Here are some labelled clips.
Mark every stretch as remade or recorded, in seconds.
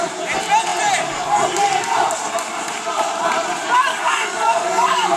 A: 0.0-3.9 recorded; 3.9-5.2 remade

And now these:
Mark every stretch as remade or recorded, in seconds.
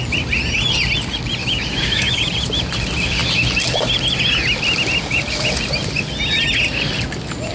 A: 0.0-1.4 recorded; 1.4-2.2 remade; 2.2-7.5 recorded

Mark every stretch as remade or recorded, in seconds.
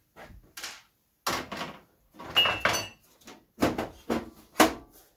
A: 0.0-5.2 recorded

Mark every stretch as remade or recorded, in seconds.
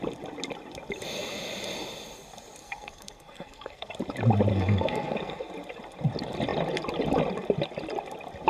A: 0.0-2.6 recorded; 2.6-3.9 remade; 3.9-4.5 recorded; 4.5-5.5 remade; 5.5-8.5 recorded